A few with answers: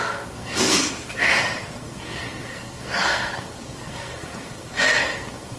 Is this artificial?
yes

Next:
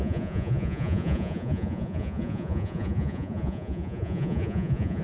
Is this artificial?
yes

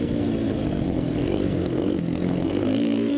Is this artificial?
yes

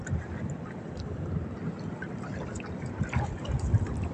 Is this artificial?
no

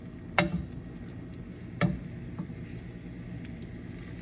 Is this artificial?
no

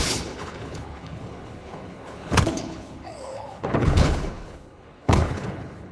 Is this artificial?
yes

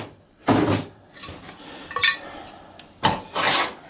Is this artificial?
no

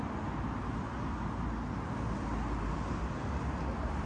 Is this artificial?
no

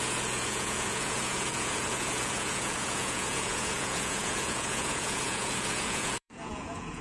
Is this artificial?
yes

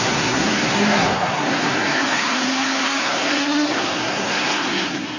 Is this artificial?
yes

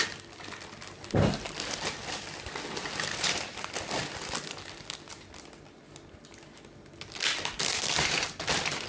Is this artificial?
no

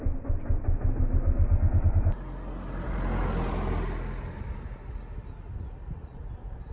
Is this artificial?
no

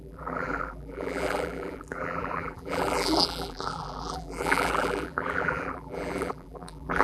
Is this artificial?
yes